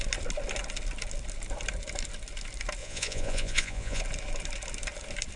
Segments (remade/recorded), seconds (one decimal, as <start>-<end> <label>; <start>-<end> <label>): 0.0-2.8 recorded; 2.8-4.0 remade; 4.0-5.4 recorded